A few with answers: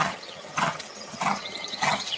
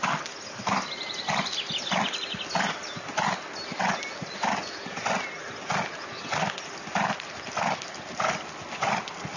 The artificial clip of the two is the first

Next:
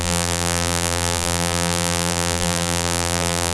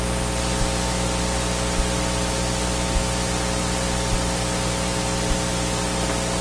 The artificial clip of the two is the first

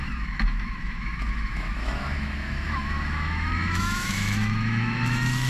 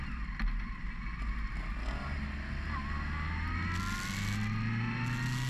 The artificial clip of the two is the first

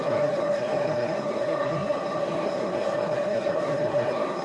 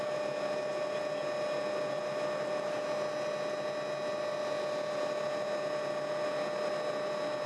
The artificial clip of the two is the first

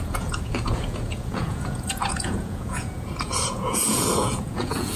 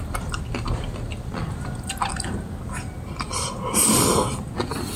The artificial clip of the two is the first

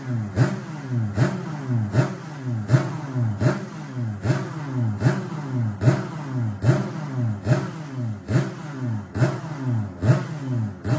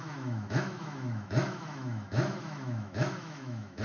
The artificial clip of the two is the second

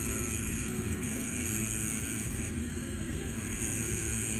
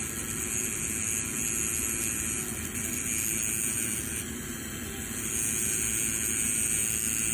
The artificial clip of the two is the first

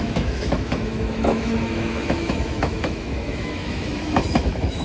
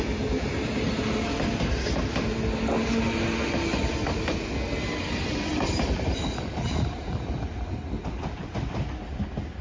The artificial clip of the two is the first